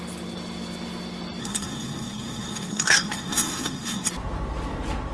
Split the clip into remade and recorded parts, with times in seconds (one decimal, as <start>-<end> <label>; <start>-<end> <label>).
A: 0.0-1.4 recorded; 1.4-4.1 remade; 4.1-5.1 recorded